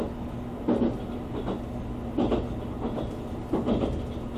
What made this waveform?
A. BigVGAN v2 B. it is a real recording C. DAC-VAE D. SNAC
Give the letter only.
B